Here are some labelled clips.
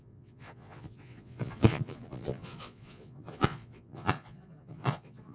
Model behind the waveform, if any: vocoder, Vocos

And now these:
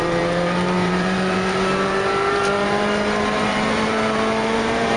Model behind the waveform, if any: vocoder, BigVGAN v2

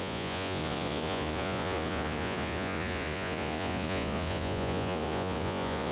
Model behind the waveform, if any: vocoder, Vocos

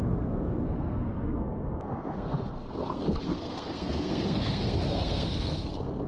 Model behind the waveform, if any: codec, SNAC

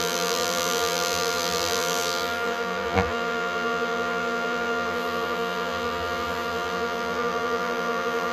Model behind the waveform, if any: vocoder, BigVGAN v2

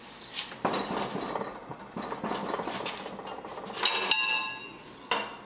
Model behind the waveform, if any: none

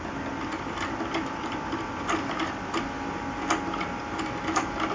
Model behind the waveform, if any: none